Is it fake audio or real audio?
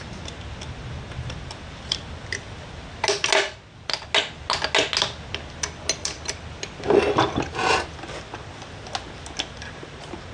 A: real